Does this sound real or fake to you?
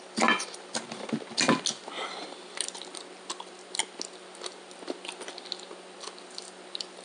real